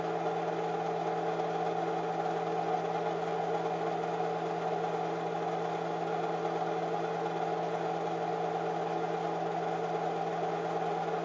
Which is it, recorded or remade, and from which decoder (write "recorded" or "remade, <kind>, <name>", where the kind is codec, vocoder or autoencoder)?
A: recorded